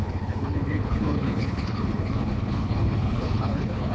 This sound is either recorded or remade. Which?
remade